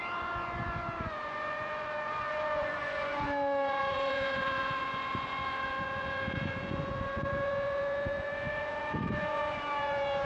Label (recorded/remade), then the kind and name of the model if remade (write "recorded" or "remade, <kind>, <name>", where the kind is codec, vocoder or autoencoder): remade, vocoder, Vocos